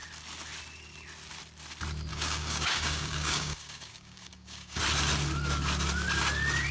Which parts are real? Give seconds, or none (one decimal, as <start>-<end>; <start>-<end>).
0.0-2.1; 4.8-6.7